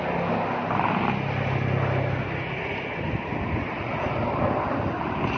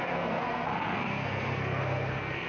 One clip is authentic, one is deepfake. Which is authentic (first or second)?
first